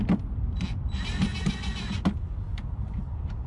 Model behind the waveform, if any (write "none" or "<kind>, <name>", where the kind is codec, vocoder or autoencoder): none